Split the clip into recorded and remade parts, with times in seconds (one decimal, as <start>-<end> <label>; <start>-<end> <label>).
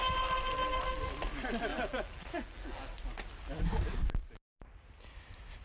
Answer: 0.0-1.7 recorded; 1.7-2.8 remade; 2.8-5.6 recorded